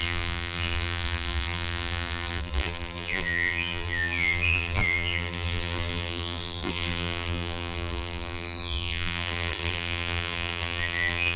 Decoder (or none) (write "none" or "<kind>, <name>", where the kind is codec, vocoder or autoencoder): vocoder, BigVGAN v2